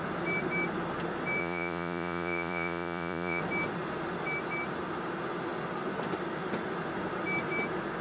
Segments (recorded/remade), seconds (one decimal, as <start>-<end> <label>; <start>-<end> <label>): 0.0-1.4 recorded; 1.4-3.4 remade; 3.4-8.0 recorded